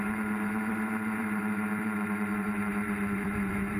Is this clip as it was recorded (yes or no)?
no